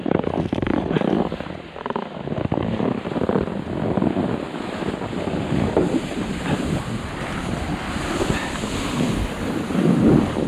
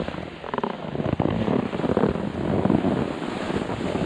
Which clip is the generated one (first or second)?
first